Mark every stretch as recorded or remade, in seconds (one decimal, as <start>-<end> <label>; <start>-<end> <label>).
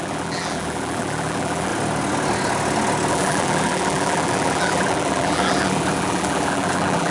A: 0.0-1.7 remade; 1.7-3.1 recorded; 3.1-7.1 remade